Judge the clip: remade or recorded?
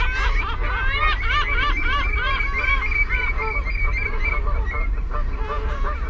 recorded